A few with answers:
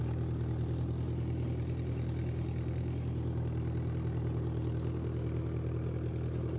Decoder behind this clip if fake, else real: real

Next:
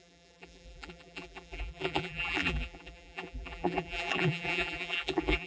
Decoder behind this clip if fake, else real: fake, vocoder, BigVGAN v2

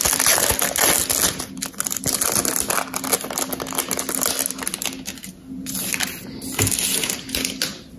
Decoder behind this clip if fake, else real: real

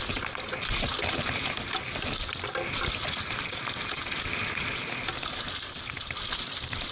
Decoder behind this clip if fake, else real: real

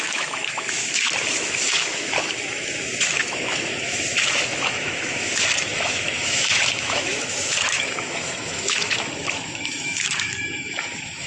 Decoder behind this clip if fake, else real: fake, autoencoder, DAC-VAE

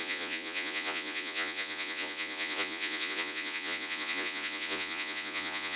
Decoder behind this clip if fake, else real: fake, vocoder, Vocos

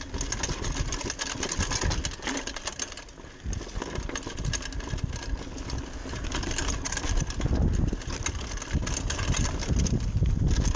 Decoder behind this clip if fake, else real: real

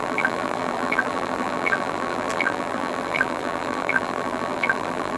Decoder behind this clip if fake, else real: fake, vocoder, BigVGAN v2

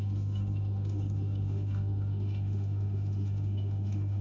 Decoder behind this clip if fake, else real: fake, autoencoder, DAC-VAE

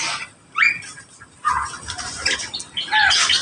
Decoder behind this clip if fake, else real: real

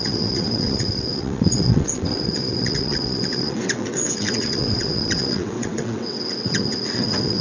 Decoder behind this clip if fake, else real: fake, vocoder, WaveNeXt